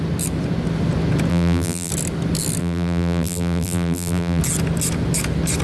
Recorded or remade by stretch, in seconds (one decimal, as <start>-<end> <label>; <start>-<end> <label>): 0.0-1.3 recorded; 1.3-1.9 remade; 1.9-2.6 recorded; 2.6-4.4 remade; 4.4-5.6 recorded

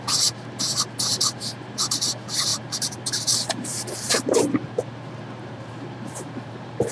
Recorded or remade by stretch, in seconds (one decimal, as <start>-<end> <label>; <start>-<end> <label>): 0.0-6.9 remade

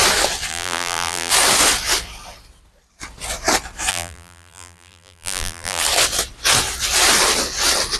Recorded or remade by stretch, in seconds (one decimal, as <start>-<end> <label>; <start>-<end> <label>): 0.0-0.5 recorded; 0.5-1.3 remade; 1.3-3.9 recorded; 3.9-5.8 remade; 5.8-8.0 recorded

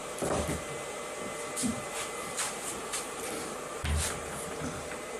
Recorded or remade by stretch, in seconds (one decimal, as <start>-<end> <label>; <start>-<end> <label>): 0.0-5.2 remade

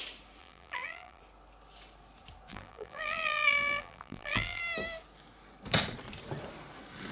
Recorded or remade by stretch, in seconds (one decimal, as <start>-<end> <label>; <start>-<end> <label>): 0.0-0.4 recorded; 0.4-1.2 remade; 1.2-2.5 recorded; 2.5-4.6 remade; 4.6-7.1 recorded

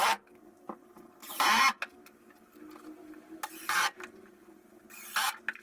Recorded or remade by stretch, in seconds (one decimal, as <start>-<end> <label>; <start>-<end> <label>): 0.0-1.2 recorded; 1.2-2.3 remade; 2.3-5.6 recorded